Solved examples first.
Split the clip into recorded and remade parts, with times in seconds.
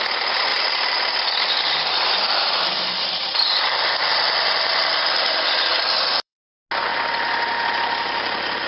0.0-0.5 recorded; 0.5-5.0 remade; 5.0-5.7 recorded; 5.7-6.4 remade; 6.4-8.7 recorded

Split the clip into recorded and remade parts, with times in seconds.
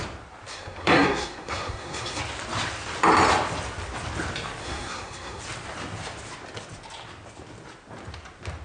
0.0-0.5 recorded; 0.5-2.2 remade; 2.2-4.6 recorded; 4.6-5.4 remade; 5.4-8.6 recorded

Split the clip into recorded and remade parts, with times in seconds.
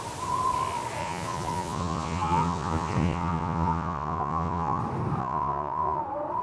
0.0-1.0 recorded; 1.0-4.8 remade; 4.8-5.2 recorded; 5.2-6.0 remade; 6.0-6.4 recorded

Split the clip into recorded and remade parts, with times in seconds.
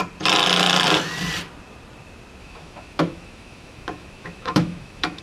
0.0-2.4 recorded; 2.4-5.2 remade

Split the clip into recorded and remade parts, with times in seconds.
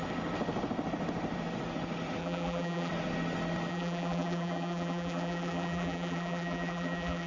0.0-2.2 recorded; 2.2-2.9 remade; 2.9-3.7 recorded; 3.7-7.3 remade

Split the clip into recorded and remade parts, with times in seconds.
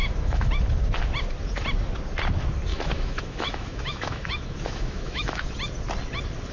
0.0-0.5 remade; 0.5-2.7 recorded; 2.7-5.5 remade; 5.5-6.5 recorded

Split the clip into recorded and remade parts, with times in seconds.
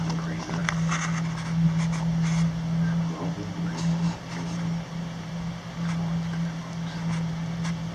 0.0-7.9 recorded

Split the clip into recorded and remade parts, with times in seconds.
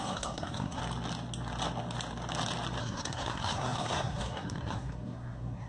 0.0-0.8 remade; 0.8-2.8 recorded; 2.8-5.7 remade